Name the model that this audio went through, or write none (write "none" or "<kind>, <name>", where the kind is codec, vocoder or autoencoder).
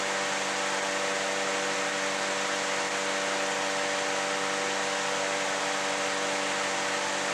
none